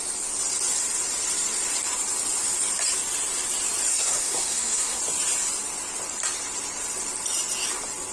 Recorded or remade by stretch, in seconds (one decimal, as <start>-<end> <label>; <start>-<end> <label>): 0.0-3.9 recorded; 3.9-5.0 remade; 5.0-8.1 recorded